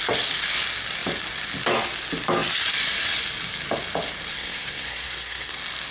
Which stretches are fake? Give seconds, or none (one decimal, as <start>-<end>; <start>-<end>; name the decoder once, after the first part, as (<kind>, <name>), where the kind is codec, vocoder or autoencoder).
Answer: 4.3-5.5 (codec, SNAC)